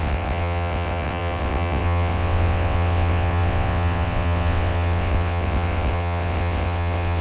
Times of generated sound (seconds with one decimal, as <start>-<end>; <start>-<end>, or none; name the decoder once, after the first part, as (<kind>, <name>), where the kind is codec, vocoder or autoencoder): 0.0-7.2 (vocoder, WaveNeXt)